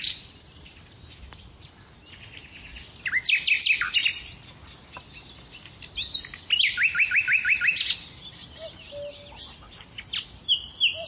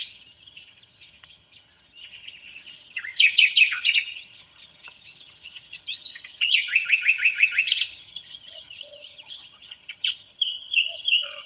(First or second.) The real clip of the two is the first